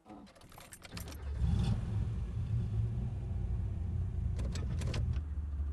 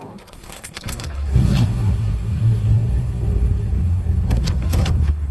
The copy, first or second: second